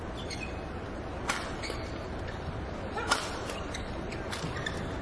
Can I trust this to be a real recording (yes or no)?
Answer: yes